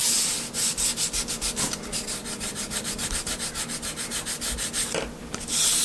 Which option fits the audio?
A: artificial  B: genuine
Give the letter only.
B